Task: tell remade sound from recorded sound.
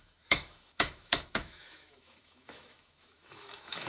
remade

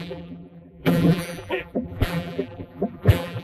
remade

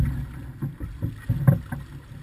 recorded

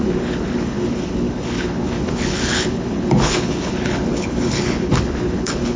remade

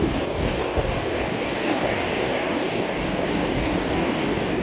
remade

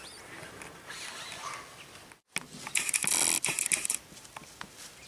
recorded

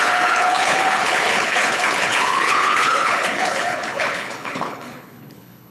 remade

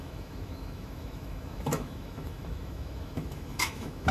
remade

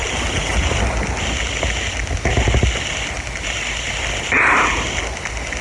recorded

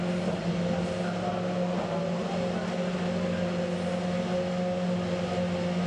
recorded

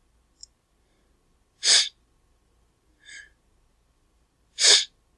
recorded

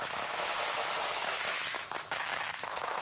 remade